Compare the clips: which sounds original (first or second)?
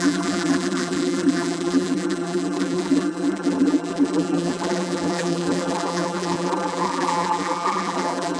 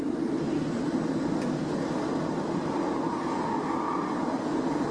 second